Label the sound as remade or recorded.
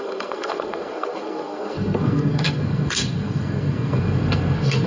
remade